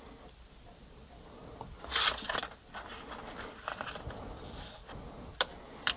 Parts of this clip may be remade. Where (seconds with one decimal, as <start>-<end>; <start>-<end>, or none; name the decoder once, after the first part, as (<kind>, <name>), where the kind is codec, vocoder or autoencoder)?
0.0-4.8 (vocoder, BigVGAN v2); 5.6-6.0